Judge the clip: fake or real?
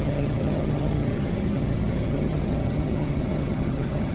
fake